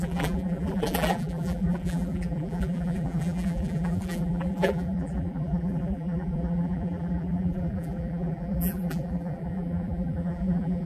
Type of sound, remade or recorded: remade